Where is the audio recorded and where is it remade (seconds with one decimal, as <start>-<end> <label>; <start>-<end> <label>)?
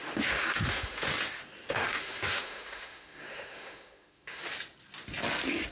0.0-1.1 remade; 1.1-1.7 recorded; 1.7-4.4 remade; 4.4-5.7 recorded